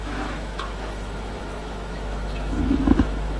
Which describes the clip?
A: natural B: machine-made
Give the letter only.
B